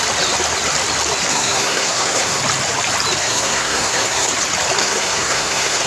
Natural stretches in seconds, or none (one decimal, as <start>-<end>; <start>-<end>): 0.0-1.3; 2.4-3.2; 4.3-4.8